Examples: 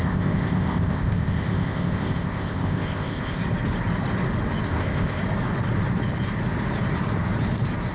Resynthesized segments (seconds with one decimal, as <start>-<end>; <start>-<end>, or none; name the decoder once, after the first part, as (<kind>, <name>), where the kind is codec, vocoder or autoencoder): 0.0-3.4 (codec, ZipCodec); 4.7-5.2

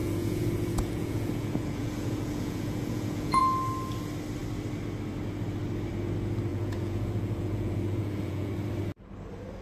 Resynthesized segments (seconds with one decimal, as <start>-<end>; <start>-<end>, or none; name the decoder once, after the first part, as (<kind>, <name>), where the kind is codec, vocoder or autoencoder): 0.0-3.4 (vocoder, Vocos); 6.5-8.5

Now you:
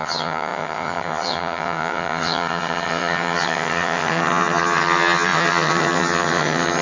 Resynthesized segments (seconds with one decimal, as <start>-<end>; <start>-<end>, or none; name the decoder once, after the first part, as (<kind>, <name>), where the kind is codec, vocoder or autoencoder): 0.0-6.8 (vocoder, HiFi-GAN)

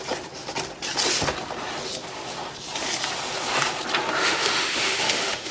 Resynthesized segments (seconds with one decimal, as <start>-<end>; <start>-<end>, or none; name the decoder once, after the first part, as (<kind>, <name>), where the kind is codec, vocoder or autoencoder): 4.2-5.5 (autoencoder, DAC-VAE)

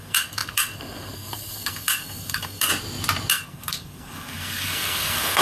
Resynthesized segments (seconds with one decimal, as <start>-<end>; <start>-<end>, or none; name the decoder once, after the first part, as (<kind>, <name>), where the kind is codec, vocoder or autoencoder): 0.0-2.7 (codec, SNAC); 3.3-5.4

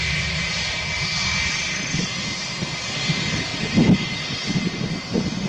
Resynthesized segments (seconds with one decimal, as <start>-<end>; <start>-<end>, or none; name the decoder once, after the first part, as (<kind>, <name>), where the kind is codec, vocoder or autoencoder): none

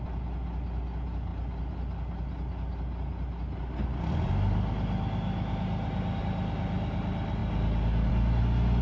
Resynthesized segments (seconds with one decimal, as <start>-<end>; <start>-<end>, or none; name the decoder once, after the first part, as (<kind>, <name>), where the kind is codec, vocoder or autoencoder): none